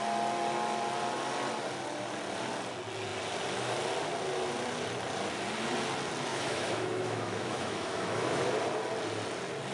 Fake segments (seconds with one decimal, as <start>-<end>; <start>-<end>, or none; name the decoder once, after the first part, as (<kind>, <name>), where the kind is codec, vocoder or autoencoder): 6.3-8.4 (autoencoder, DAC-VAE)